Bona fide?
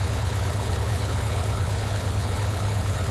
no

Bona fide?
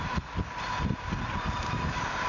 yes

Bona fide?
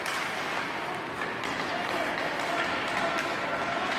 yes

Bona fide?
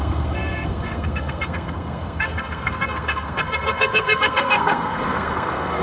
no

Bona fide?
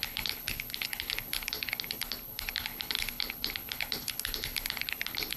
no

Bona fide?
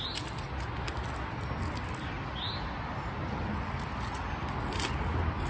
yes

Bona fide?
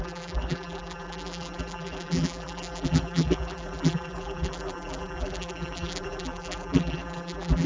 no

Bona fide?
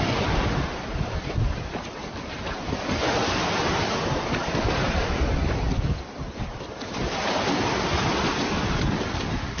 no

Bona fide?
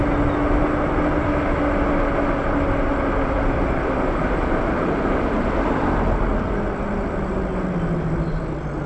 yes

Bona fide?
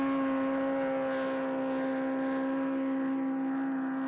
yes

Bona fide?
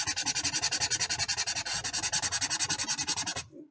yes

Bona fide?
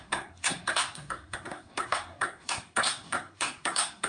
no